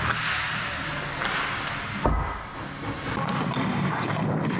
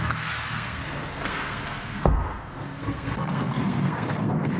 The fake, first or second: second